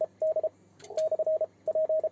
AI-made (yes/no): no